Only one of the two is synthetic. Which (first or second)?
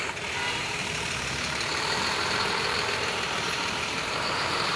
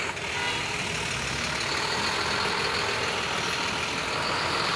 first